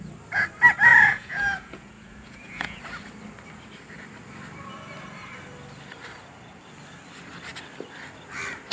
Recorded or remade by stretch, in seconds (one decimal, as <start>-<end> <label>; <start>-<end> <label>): 0.0-0.9 recorded; 0.9-2.8 remade; 2.8-8.7 recorded

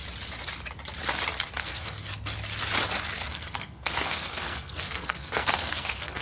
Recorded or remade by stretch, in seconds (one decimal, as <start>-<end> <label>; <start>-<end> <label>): 0.0-1.6 recorded; 1.6-2.1 remade; 2.1-3.3 recorded; 3.3-6.2 remade

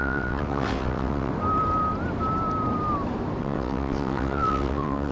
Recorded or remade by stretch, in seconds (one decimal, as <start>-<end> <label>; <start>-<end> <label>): 0.0-1.3 remade; 1.3-3.4 recorded; 3.4-5.1 remade